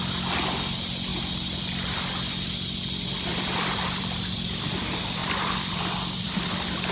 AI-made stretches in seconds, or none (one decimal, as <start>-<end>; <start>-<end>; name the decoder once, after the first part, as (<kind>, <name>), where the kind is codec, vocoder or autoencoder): 3.3-4.0 (vocoder, BigVGAN v2); 5.2-6.5